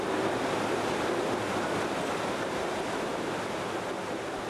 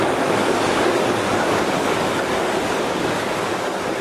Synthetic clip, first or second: second